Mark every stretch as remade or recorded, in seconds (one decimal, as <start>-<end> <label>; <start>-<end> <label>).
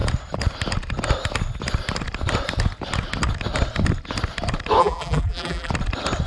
0.0-4.8 recorded; 4.8-5.7 remade; 5.7-6.3 recorded